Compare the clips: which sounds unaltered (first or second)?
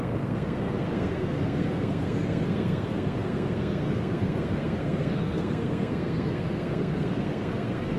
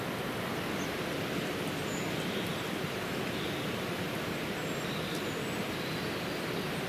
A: second